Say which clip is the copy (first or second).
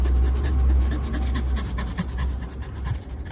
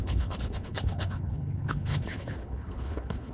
second